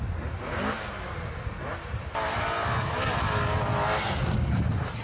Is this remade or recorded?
recorded